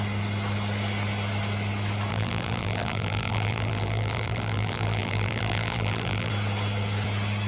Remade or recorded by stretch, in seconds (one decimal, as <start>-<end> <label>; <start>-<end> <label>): 0.0-2.1 recorded; 2.1-6.3 remade; 6.3-7.5 recorded